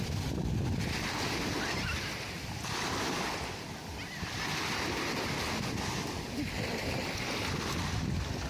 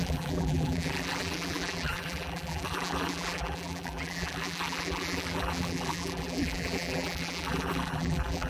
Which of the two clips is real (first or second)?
first